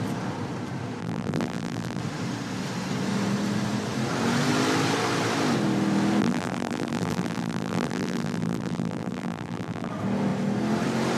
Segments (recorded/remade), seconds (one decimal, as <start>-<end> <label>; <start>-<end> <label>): 0.0-1.0 recorded; 1.0-2.0 remade; 2.0-6.2 recorded; 6.2-9.9 remade; 9.9-11.2 recorded